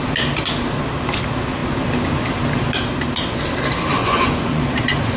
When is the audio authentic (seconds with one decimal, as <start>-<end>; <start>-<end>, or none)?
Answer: 0.0-4.0; 4.6-5.2